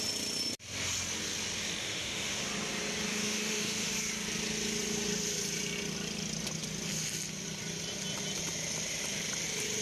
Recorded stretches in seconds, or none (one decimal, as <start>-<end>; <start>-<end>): 0.0-1.8; 2.4-3.1; 3.9-9.8